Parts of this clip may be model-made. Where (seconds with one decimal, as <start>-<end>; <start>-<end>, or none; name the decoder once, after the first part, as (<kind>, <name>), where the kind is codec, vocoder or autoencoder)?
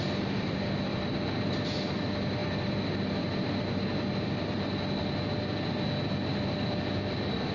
none